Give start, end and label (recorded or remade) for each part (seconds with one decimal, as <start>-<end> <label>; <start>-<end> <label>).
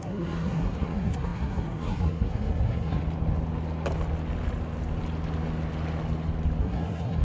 0.0-3.0 remade; 3.0-6.6 recorded; 6.6-7.2 remade